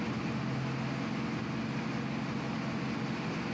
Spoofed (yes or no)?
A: no